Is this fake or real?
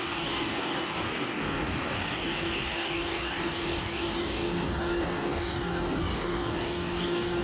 fake